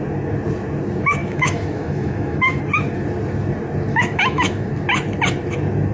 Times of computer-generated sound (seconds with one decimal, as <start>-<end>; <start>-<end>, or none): 1.2-2.6; 3.9-4.7